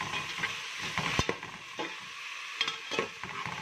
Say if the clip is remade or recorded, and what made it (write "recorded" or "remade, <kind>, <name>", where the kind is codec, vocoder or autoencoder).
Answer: recorded